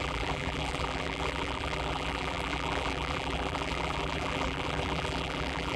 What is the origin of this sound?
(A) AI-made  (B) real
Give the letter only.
A